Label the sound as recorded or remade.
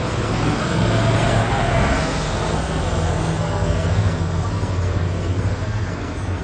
remade